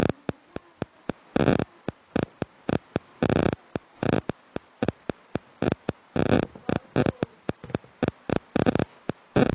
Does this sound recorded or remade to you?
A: recorded